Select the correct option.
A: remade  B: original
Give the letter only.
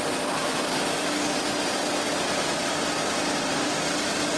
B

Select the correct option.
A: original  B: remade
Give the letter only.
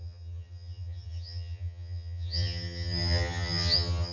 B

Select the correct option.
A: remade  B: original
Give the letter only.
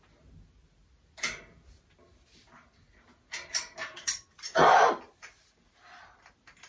B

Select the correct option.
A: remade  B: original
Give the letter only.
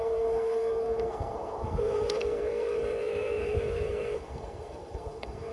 A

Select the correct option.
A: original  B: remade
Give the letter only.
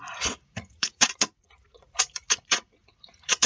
B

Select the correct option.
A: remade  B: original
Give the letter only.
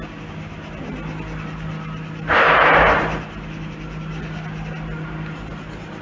B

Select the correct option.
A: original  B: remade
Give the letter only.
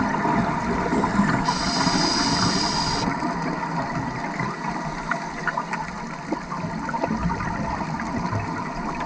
A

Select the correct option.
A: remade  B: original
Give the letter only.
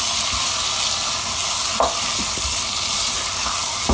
B